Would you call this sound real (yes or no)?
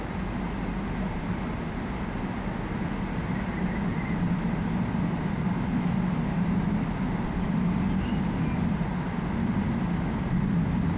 yes